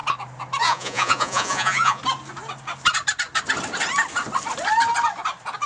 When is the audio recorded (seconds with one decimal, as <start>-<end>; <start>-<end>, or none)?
0.0-0.6; 2.0-5.7